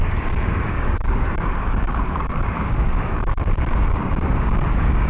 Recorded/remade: remade